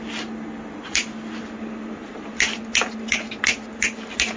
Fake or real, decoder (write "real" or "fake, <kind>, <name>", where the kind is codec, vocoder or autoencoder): real